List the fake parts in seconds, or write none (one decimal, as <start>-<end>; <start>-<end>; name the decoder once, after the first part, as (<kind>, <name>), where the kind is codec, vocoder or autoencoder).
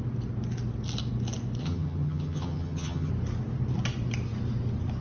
1.6-3.1 (vocoder, HiFi-GAN)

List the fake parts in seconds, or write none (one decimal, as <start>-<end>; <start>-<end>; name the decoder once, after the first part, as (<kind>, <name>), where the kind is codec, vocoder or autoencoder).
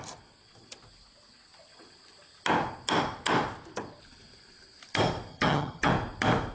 5.3-5.9 (vocoder, HiFi-GAN)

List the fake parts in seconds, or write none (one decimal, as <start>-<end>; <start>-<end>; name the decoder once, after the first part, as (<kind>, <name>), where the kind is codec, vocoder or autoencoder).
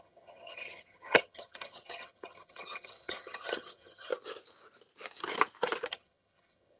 0.0-4.1 (vocoder, HiFi-GAN); 5.9-6.8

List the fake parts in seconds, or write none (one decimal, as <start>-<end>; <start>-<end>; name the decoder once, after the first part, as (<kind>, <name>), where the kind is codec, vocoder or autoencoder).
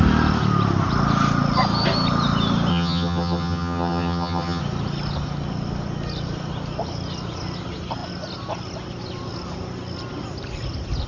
2.7-4.6 (vocoder, HiFi-GAN)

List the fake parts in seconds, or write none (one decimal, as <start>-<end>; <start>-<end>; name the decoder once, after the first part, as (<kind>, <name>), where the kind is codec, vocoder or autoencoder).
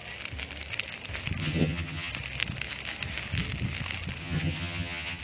1.4-2.1 (vocoder, HiFi-GAN); 4.2-5.2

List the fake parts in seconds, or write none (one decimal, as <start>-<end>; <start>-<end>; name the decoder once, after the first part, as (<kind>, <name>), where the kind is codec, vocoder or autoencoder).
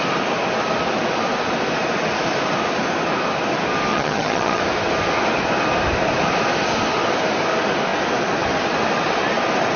3.9-4.6 (vocoder, HiFi-GAN)